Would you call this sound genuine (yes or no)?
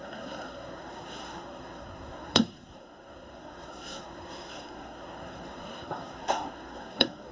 no